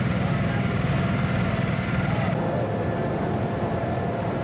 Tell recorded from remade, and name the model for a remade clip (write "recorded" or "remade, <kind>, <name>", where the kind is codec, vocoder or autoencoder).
recorded